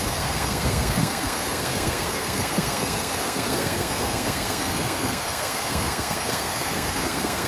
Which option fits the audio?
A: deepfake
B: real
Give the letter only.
A